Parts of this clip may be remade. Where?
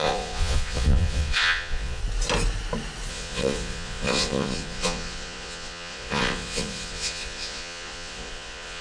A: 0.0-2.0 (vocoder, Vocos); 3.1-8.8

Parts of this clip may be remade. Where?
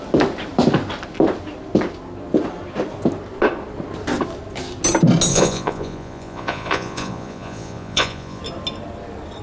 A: 5.3-8.4 (vocoder, Vocos)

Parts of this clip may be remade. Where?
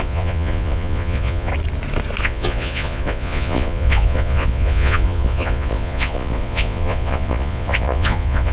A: 0.0-1.5 (vocoder, Vocos); 2.2-8.5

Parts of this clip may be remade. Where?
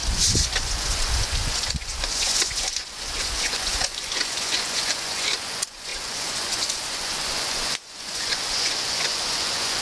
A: 0.0-9.8 (vocoder, Vocos)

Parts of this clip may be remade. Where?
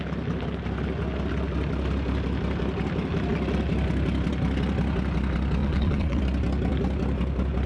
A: 5.6-6.2 (vocoder, Vocos)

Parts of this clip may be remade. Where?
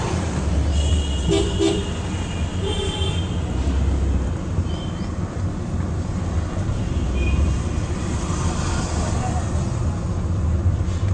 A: none